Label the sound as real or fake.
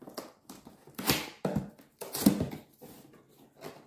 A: real